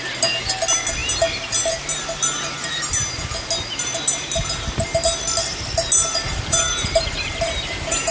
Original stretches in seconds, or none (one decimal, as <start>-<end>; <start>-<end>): 0.0-6.1